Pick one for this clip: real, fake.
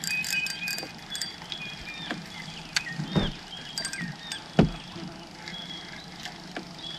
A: real